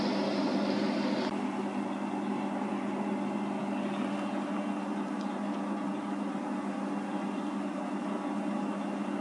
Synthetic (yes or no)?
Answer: no